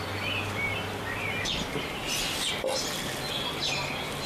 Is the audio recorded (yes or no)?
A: yes